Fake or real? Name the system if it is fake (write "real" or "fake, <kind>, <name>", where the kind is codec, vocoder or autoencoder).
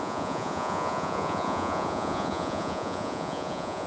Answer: fake, vocoder, Vocos